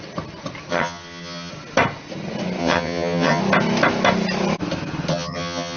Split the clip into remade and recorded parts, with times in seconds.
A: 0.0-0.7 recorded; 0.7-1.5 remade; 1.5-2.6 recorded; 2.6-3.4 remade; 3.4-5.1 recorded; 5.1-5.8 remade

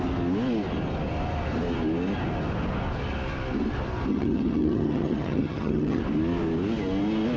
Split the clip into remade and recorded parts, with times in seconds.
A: 0.0-4.1 recorded; 4.1-6.0 remade; 6.0-7.4 recorded